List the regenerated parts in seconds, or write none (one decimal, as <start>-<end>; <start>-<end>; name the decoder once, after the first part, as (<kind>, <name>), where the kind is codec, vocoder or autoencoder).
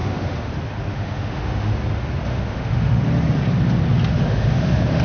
0.0-0.5 (autoencoder, DAC-VAE); 0.9-1.7; 2.3-3.0; 4.1-5.0